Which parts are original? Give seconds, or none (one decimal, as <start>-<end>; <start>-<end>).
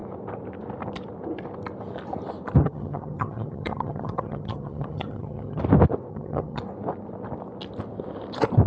0.0-2.6; 5.6-6.1; 6.6-8.7